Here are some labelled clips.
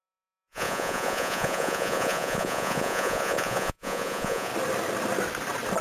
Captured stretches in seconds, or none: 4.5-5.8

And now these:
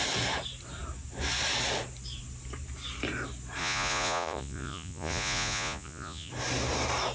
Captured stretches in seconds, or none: 0.0-3.6; 6.3-7.1